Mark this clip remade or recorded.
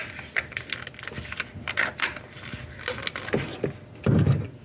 recorded